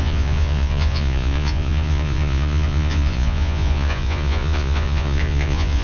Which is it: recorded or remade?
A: remade